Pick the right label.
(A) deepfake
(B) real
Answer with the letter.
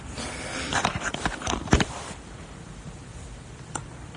A